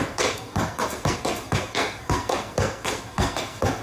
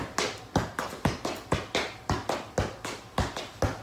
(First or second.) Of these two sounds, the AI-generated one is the first